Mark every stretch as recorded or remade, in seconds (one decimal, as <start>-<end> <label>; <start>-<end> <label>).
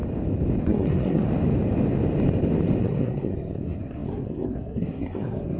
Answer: 0.0-0.6 recorded; 0.6-1.3 remade; 1.3-2.8 recorded; 2.8-5.6 remade